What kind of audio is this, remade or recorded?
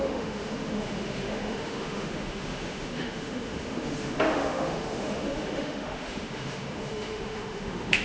remade